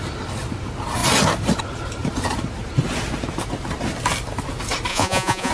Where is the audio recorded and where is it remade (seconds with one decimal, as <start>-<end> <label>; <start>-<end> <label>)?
0.0-4.9 recorded; 4.9-5.5 remade